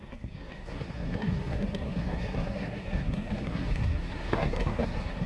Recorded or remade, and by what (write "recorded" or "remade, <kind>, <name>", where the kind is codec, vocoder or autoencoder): remade, codec, SNAC